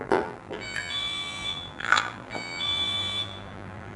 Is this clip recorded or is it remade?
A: remade